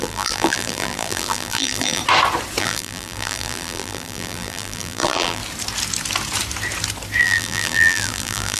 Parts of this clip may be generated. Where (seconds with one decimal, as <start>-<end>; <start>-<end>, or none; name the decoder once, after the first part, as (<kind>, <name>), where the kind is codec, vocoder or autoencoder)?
0.0-2.0 (vocoder, BigVGAN v2); 2.6-5.4; 7.2-8.6